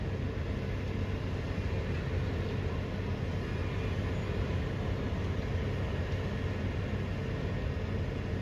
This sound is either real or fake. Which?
real